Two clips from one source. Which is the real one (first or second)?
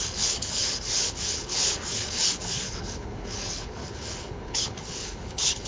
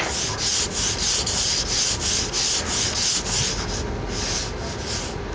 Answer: second